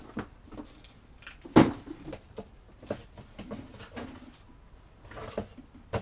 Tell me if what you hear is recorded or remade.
recorded